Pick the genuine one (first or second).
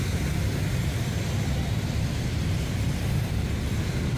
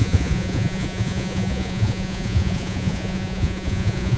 first